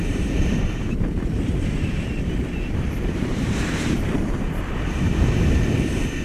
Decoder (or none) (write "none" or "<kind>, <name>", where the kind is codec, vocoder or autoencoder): vocoder, BigVGAN v2